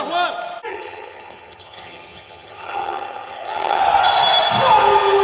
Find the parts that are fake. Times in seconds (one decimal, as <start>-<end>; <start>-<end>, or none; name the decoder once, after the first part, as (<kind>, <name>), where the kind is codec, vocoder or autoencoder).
0.7-3.8 (vocoder, HiFi-GAN)